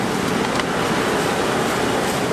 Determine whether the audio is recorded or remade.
recorded